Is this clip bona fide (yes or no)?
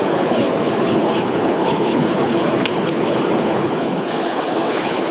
no